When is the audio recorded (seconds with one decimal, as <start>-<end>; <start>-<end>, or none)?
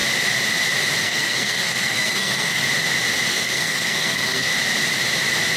0.0-1.0; 2.6-3.3; 4.5-5.6